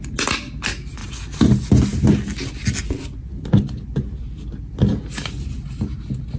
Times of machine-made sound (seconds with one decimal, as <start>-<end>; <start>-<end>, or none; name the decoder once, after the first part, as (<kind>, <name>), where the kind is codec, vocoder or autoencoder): 1.0-1.5 (vocoder, BigVGAN v2)